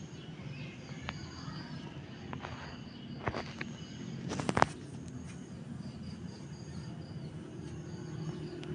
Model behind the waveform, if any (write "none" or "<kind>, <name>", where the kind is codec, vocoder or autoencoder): none